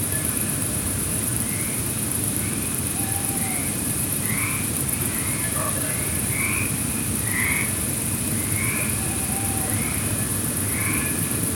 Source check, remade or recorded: remade